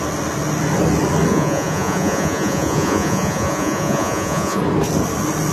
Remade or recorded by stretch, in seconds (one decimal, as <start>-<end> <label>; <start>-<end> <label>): 0.0-1.3 recorded; 1.3-4.6 remade; 4.6-5.5 recorded